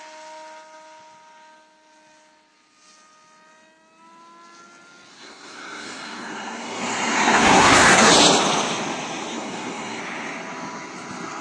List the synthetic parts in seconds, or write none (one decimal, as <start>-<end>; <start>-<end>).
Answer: 5.1-8.1; 9.3-10.0